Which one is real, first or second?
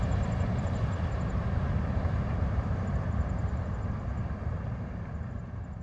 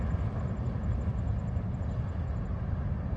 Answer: second